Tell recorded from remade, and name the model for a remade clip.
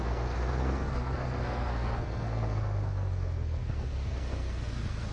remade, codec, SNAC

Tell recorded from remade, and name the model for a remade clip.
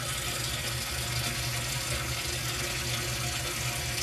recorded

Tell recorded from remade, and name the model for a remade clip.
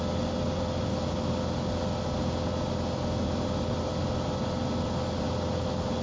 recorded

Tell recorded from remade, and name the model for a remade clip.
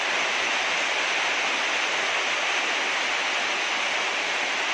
recorded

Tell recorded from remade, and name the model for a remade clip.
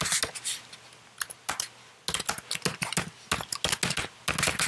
recorded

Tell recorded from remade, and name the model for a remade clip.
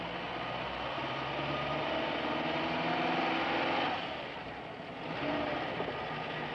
recorded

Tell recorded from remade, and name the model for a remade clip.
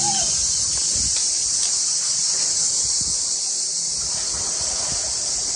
recorded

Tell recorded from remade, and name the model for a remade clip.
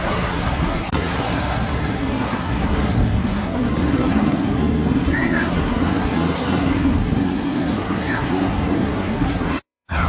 remade, codec, SNAC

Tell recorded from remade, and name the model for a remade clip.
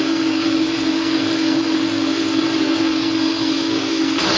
remade, codec, SNAC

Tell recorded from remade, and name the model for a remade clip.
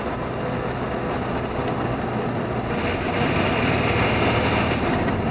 recorded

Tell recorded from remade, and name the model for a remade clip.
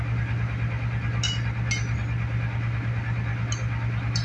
recorded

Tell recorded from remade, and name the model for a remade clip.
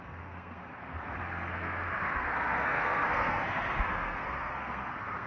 remade, codec, SNAC